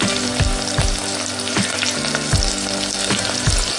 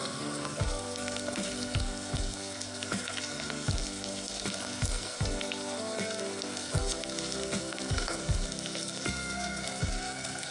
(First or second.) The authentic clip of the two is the first